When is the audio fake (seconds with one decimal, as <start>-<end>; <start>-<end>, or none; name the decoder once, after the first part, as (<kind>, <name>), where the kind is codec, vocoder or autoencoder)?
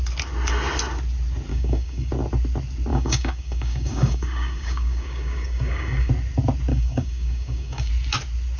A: 1.5-2.1 (codec, DAC); 2.9-6.1; 6.7-7.9